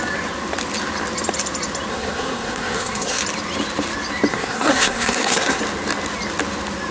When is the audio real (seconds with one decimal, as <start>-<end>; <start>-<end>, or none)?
0.0-1.9; 3.2-4.3; 5.6-6.9